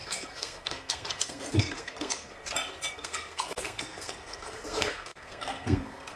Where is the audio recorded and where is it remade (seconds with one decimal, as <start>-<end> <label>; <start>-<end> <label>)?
0.0-2.4 remade; 2.4-2.9 recorded; 2.9-6.2 remade